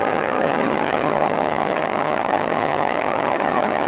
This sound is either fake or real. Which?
fake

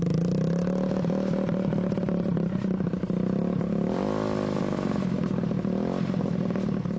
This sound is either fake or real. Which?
real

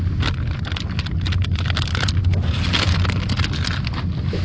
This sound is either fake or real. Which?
real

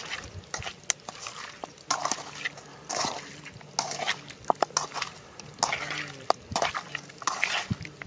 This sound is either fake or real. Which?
real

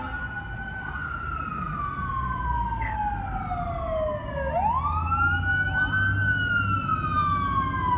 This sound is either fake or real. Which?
real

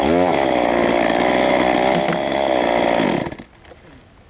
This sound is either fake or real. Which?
real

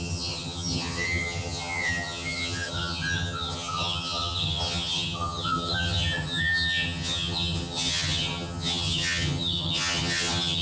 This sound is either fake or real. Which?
fake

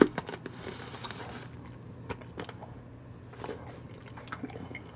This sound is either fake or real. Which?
real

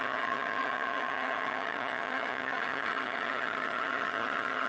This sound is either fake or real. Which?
fake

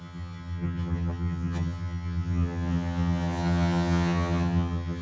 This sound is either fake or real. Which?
fake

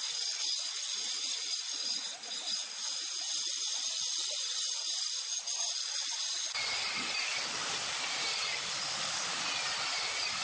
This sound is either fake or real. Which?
real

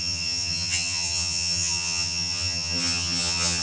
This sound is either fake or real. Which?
fake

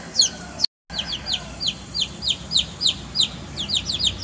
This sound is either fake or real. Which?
real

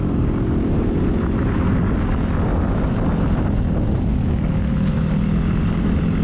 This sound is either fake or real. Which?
real